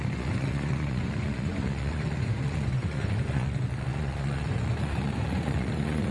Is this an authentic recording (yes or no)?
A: no